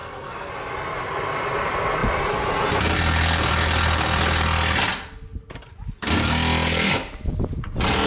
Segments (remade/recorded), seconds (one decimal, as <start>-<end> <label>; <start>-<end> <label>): 0.0-0.5 remade; 0.5-8.1 recorded